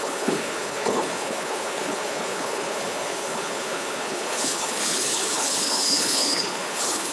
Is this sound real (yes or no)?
no